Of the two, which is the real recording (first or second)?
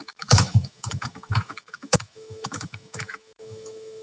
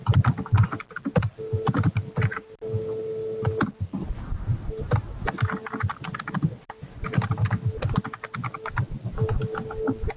second